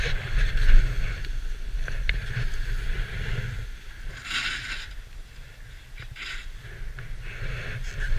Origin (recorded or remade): recorded